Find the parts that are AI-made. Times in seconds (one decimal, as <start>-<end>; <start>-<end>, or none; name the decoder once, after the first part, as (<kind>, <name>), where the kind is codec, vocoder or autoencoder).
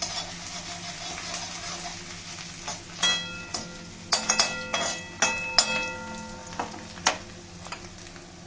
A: none